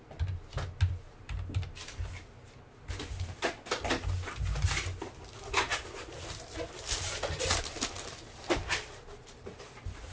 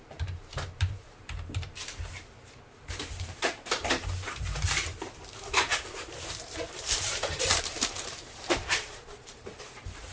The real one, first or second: first